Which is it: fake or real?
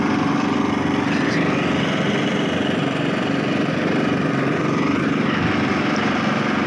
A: real